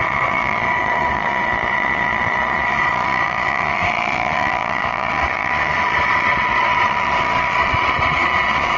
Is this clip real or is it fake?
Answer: fake